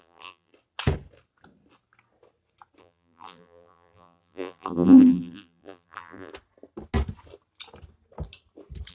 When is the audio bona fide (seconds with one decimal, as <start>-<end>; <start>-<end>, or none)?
0.5-2.8; 6.3-8.9

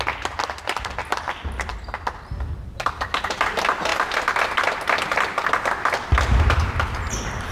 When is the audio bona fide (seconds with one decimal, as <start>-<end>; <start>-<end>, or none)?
0.0-7.5

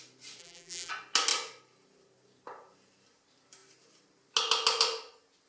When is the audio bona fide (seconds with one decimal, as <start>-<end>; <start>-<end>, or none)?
0.0-0.4; 0.9-5.5

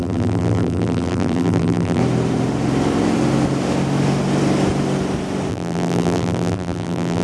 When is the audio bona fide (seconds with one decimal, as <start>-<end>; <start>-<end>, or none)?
2.0-5.5

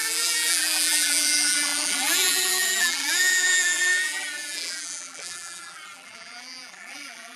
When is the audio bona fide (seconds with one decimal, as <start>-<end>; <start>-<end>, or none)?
none

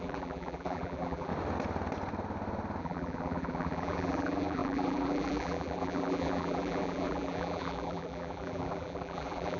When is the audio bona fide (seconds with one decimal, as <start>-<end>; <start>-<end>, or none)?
1.3-2.8